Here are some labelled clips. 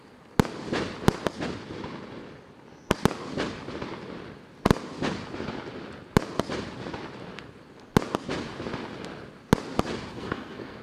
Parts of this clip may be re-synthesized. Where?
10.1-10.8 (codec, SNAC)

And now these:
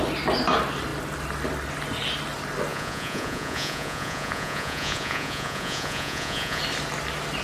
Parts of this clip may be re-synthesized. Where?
2.7-6.6 (vocoder, Vocos)

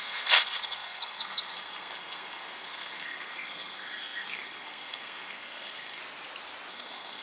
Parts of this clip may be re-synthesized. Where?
0.0-6.0 (codec, SNAC); 6.7-7.2

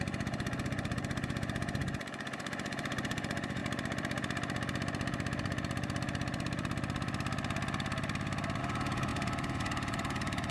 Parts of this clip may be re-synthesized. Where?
0.0-3.6 (vocoder, Vocos); 8.6-10.5

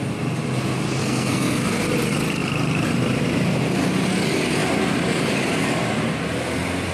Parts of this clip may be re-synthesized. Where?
1.0-1.8 (codec, SNAC)

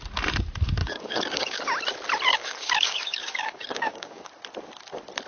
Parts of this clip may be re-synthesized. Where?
0.8-1.6 (codec, DAC); 2.3-4.3

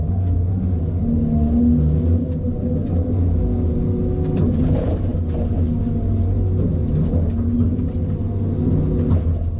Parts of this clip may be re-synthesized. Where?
none